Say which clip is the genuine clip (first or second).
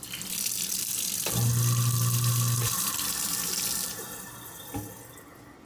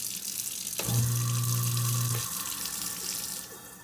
second